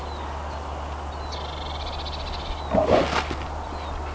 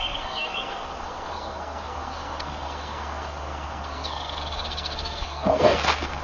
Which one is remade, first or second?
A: second